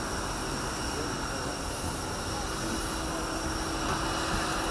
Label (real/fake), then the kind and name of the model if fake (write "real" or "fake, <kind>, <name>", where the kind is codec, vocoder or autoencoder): real